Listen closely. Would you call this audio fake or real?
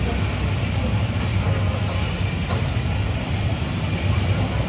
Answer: real